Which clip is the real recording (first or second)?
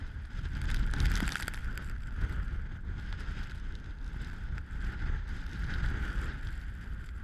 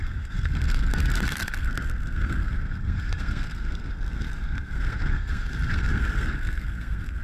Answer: first